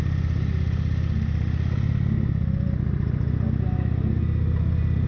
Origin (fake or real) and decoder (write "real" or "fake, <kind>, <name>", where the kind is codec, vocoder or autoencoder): real